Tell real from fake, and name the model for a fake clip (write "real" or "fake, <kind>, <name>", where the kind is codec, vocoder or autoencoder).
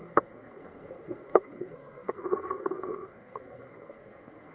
fake, codec, SNAC